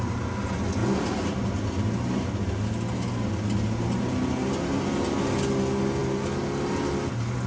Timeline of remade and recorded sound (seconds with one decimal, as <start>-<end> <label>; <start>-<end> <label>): 0.0-7.5 recorded